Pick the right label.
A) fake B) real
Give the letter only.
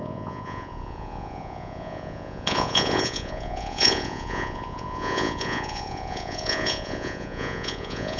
A